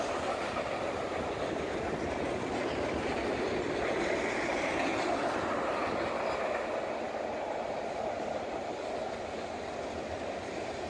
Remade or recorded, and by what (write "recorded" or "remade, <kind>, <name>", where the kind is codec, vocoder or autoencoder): recorded